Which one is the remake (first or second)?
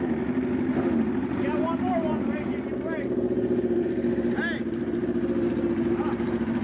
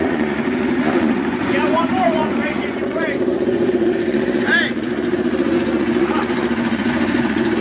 second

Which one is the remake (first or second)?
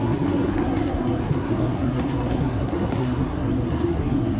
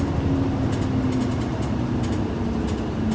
first